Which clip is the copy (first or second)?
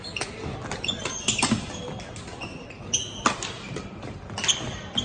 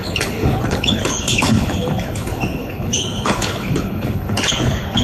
second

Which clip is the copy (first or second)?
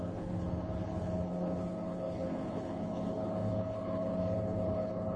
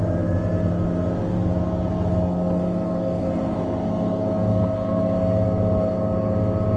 first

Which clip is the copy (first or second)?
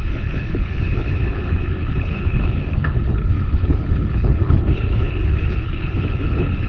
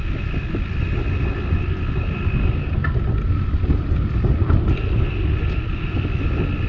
first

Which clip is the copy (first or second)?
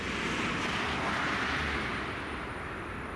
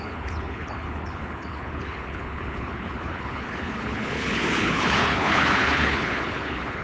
second